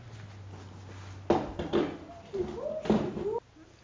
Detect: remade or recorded recorded